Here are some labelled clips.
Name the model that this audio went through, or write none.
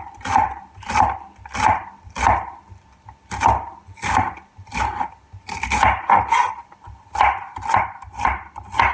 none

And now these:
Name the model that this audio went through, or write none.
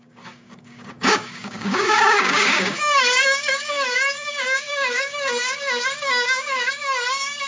codec, DAC